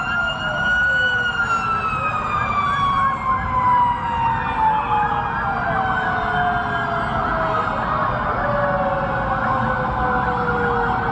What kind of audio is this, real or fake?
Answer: real